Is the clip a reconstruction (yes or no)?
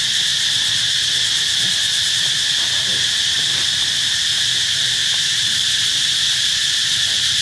yes